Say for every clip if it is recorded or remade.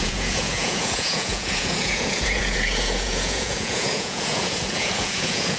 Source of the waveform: remade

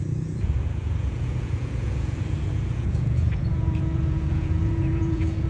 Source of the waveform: remade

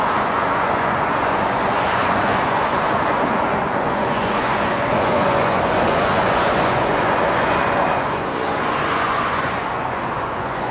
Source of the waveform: remade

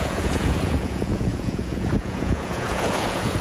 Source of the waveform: remade